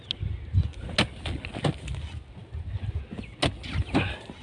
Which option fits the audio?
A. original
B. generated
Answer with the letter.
A